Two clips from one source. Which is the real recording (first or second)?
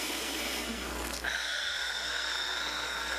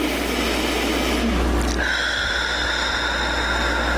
second